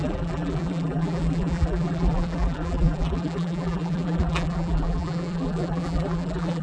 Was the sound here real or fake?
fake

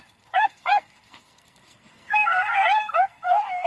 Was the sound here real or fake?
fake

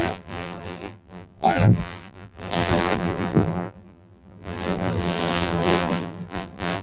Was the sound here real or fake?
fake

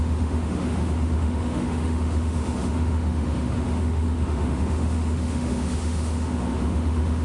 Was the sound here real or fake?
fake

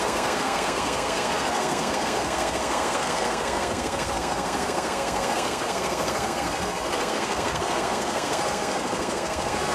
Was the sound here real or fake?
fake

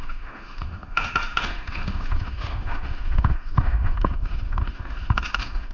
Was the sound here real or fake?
fake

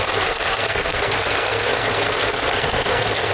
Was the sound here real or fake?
fake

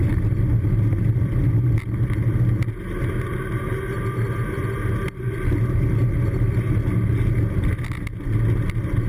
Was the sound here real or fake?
real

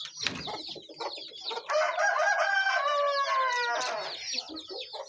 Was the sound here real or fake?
real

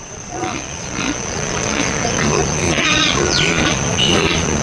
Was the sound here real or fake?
fake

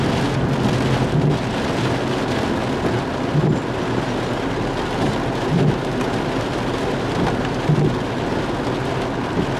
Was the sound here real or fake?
real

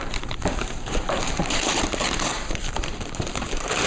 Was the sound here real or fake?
fake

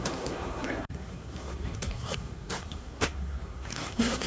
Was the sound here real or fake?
fake